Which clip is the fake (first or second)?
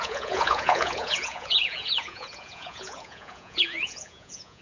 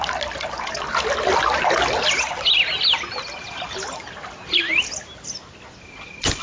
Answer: first